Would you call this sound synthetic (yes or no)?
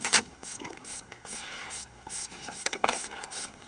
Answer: yes